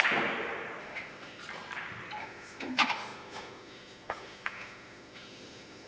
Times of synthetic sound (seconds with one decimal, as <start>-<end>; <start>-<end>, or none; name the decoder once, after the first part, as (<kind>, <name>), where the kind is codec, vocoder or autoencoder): 0.8-1.4 (autoencoder, DAC-VAE); 2.2-5.9